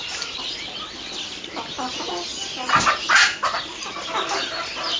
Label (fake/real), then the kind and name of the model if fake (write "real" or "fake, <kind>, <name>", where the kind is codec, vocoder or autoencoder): real